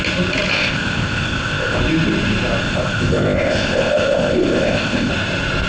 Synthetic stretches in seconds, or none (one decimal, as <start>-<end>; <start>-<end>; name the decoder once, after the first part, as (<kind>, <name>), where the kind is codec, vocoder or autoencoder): 0.5-1.8 (codec, ZipCodec); 2.6-5.1